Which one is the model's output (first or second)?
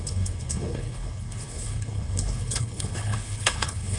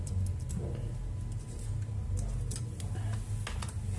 first